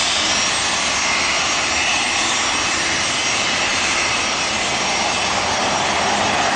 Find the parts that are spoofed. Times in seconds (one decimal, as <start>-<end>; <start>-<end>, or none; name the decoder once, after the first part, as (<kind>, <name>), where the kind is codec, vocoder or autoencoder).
none